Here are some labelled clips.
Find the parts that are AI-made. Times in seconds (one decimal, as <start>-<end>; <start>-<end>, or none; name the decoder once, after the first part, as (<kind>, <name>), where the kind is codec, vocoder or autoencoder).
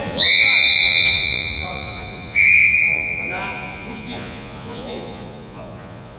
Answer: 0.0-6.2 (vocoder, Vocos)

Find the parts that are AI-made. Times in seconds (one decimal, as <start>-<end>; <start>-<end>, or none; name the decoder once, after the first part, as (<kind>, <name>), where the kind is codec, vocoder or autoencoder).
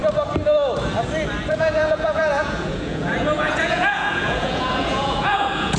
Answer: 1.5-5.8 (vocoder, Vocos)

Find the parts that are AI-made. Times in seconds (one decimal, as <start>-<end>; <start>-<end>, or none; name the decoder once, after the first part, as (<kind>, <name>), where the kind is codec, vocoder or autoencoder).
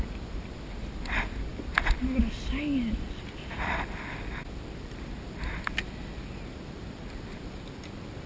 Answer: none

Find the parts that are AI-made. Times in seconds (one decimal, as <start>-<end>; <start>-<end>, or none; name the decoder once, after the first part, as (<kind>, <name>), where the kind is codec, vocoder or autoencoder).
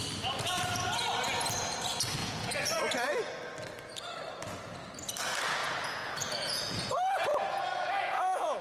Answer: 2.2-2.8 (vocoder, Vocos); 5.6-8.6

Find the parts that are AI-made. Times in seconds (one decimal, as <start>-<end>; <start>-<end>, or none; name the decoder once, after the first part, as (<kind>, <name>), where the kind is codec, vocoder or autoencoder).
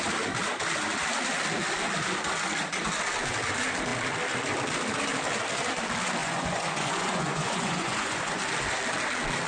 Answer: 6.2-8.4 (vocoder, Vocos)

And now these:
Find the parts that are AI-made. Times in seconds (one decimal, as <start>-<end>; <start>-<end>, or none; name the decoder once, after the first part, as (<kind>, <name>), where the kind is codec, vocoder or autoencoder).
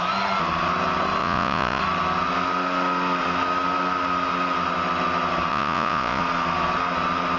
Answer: 1.2-1.8 (vocoder, Vocos); 5.5-6.2